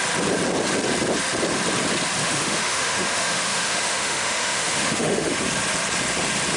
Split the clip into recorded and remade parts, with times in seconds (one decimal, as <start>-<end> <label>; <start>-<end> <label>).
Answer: 0.0-2.2 recorded; 2.2-5.3 remade; 5.3-6.6 recorded